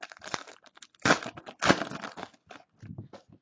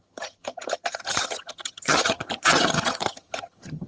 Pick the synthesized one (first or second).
second